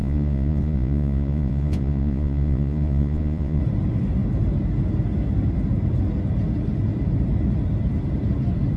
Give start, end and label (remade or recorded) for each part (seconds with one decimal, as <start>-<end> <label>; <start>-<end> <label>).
0.0-3.6 remade; 3.6-8.8 recorded